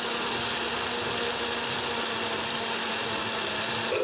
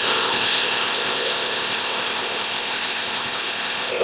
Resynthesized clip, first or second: second